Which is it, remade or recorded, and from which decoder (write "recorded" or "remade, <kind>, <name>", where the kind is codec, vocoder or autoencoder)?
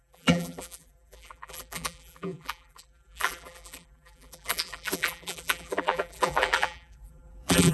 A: remade, vocoder, BigVGAN v2